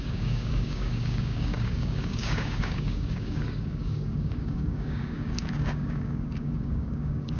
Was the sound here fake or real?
fake